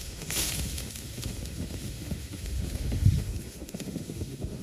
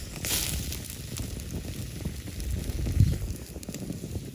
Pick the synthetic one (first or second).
first